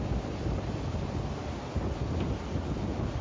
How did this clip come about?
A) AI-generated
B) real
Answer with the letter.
B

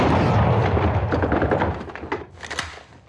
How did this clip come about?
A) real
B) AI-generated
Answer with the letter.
A